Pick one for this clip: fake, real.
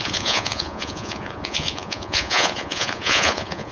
fake